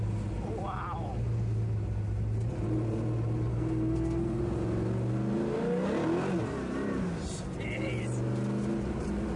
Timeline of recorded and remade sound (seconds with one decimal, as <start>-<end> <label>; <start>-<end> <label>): 0.0-3.5 recorded; 3.5-4.4 remade; 4.4-9.4 recorded